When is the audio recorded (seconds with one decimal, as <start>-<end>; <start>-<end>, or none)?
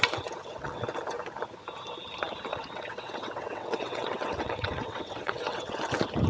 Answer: 0.0-0.4; 1.0-2.5; 5.8-6.3